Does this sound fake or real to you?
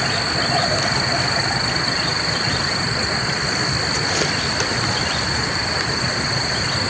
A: real